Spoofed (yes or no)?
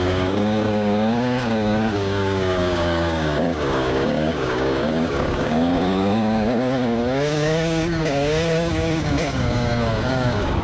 yes